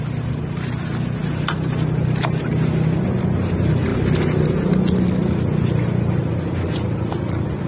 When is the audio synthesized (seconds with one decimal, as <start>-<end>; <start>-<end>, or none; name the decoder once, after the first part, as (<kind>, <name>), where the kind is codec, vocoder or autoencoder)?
none